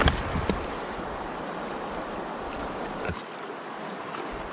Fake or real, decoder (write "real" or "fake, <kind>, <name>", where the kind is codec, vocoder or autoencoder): real